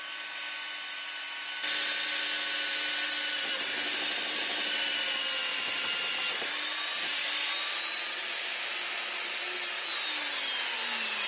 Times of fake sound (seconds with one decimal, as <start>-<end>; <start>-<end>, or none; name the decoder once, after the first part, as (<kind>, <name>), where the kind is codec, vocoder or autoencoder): none

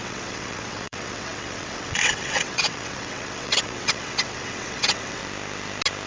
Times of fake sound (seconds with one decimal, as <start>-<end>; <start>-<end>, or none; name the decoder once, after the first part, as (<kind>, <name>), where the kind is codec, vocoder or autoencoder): 0.0-5.2 (vocoder, WaveNeXt)

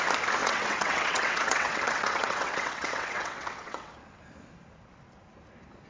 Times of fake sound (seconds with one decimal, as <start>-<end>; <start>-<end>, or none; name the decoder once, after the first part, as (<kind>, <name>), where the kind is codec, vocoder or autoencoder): 0.4-3.9 (vocoder, WaveNeXt)

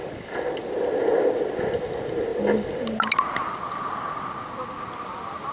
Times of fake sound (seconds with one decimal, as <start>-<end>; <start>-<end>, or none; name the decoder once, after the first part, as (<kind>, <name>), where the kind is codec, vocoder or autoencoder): none

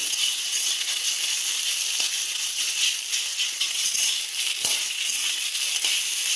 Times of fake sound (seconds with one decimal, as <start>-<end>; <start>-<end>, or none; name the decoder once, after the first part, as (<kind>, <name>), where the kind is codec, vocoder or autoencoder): 0.0-1.1 (vocoder, WaveNeXt); 2.3-2.9; 3.3-4.1; 4.6-5.4

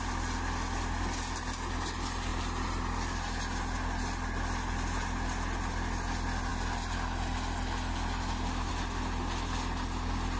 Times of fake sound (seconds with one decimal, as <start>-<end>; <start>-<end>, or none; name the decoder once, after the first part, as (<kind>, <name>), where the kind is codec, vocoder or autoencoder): none

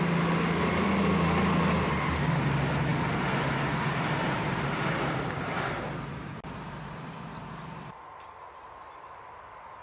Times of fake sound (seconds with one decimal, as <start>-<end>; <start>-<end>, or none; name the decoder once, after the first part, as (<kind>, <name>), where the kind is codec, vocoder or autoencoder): none

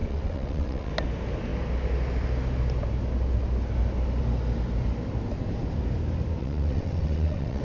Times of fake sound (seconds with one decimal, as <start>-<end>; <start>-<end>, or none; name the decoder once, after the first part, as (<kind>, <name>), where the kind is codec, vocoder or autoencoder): 0.0-0.9 (vocoder, WaveNeXt); 6.4-7.6